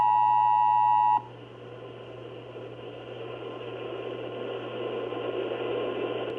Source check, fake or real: real